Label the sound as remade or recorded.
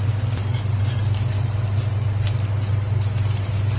recorded